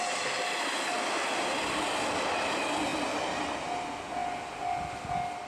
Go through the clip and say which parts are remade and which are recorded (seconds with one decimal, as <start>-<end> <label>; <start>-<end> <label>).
0.0-5.5 recorded